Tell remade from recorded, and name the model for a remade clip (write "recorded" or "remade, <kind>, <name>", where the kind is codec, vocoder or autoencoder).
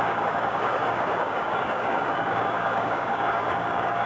remade, codec, DAC